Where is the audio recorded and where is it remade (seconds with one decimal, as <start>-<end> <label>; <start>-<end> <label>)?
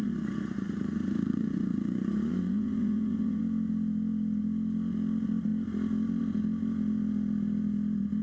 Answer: 0.0-3.4 remade; 3.4-8.2 recorded